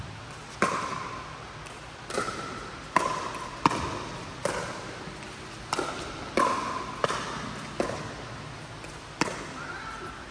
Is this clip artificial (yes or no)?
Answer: no